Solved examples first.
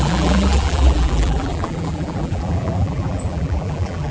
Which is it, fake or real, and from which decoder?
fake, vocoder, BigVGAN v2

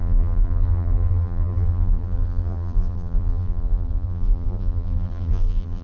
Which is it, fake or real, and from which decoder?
fake, vocoder, BigVGAN v2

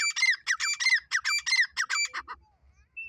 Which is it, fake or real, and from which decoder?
real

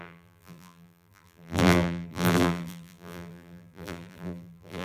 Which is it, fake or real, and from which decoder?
fake, vocoder, BigVGAN v2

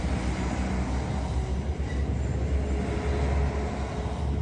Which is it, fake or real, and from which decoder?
real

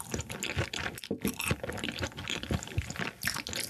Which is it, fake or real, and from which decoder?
real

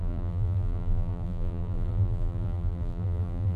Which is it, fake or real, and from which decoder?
fake, vocoder, BigVGAN v2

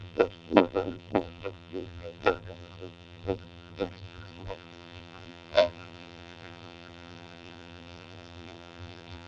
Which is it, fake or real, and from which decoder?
fake, vocoder, BigVGAN v2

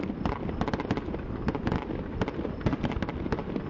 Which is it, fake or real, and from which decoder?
real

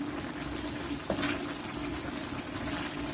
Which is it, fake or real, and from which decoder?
real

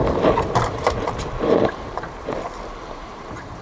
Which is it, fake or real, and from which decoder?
real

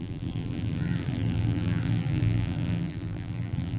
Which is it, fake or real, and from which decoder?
fake, vocoder, BigVGAN v2